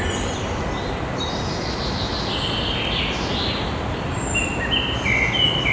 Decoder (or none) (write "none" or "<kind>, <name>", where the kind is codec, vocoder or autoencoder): none